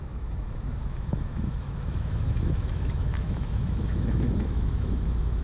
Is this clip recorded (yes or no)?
no